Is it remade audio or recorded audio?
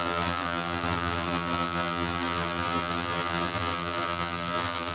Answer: remade